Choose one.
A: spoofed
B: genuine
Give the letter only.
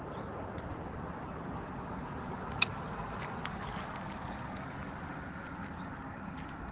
B